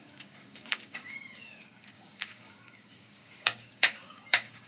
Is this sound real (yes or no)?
no